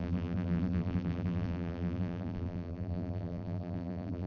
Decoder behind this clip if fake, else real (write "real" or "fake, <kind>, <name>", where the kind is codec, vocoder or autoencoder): fake, vocoder, BigVGAN v2